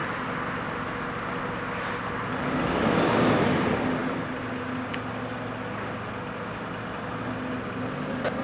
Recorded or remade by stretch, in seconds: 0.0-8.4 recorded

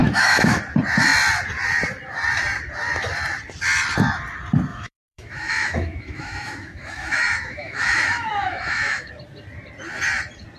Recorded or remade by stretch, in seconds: 0.0-0.6 remade; 0.6-4.7 recorded; 4.7-9.1 remade; 9.1-10.6 recorded

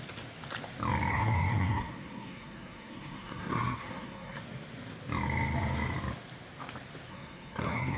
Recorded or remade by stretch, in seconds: 0.0-1.1 recorded; 1.1-4.4 remade; 4.4-7.1 recorded; 7.1-8.0 remade

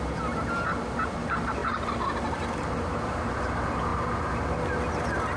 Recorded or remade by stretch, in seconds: 0.0-5.4 recorded